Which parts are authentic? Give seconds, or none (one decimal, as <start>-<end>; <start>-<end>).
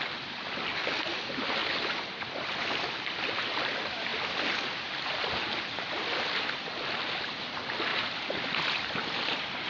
0.0-7.9